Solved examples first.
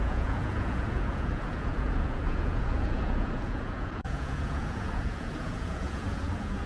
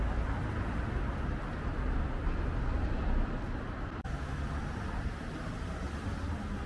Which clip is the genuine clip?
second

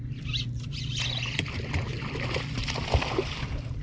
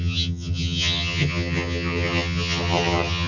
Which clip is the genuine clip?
first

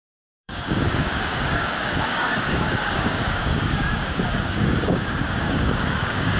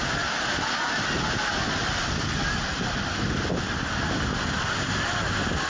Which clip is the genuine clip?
second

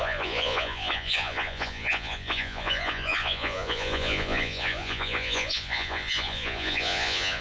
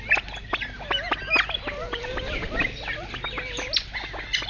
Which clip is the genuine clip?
second